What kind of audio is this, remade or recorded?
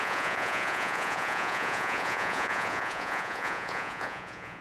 remade